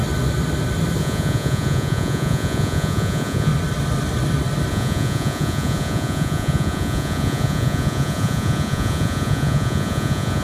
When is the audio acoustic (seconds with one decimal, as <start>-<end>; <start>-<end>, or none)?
0.0-1.0; 3.5-4.7